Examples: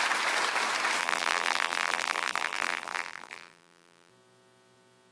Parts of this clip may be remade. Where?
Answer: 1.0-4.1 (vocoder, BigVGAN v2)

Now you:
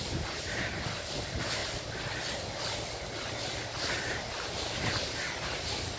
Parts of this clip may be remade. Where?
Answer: none

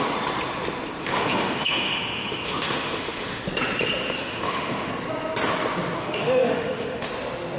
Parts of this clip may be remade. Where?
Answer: 1.0-3.4 (autoencoder, DAC-VAE); 4.2-4.9; 6.0-7.1

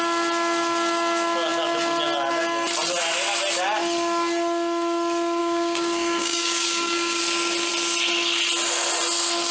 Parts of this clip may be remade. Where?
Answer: 5.4-7.2 (codec, DAC)

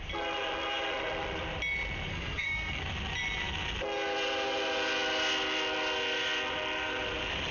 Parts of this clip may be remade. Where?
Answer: 2.1-2.8 (codec, SNAC)

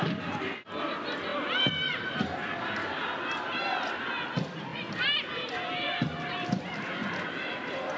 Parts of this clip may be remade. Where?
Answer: none

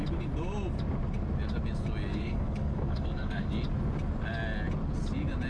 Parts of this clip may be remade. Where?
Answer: 2.1-3.5 (codec, DAC)

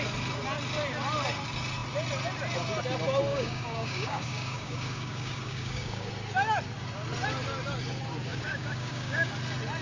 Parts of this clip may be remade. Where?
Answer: 3.3-6.1 (codec, DAC); 8.3-9.3